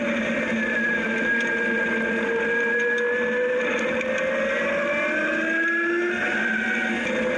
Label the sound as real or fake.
real